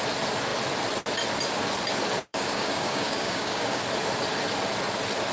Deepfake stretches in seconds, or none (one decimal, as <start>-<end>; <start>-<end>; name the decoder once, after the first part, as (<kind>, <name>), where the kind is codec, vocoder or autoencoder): 2.3-3.8 (codec, DAC)